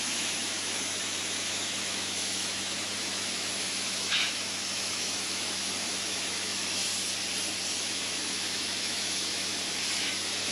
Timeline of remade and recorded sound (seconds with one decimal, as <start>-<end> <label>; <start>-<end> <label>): 0.0-6.9 remade; 6.9-7.7 recorded; 7.7-9.5 remade; 9.5-10.0 recorded; 10.0-10.5 remade